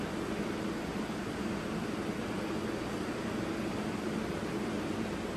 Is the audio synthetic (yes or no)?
no